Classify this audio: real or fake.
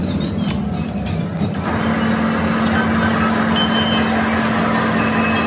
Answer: real